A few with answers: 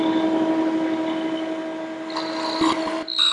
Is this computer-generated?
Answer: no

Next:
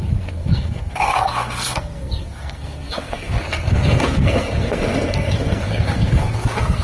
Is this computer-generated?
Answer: yes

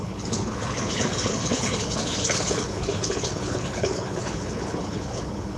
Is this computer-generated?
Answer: yes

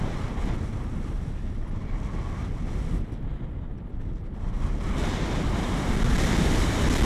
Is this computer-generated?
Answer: no